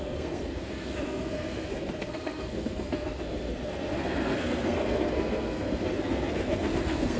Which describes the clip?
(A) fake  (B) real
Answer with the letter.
A